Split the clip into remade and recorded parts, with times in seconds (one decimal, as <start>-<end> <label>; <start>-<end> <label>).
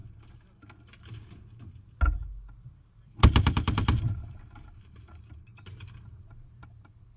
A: 0.0-3.2 recorded; 3.2-7.2 remade